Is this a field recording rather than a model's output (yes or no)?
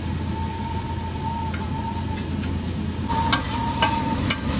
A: yes